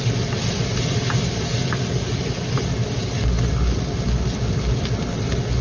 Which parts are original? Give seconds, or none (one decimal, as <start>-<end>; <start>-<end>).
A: 0.0-3.0; 3.6-5.6

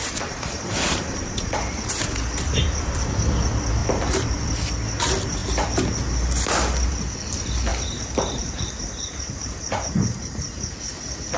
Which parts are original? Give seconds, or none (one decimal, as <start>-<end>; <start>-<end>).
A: 1.9-3.8; 4.4-7.7; 10.7-11.4

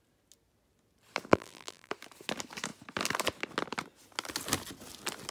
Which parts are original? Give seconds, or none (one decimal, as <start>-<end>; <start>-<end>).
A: 0.0-1.3; 1.9-5.3